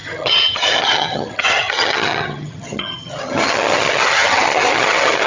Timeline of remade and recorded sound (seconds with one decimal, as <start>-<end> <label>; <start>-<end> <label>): 0.0-5.3 remade